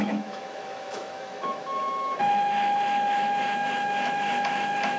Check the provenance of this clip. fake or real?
fake